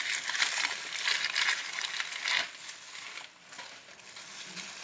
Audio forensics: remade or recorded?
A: recorded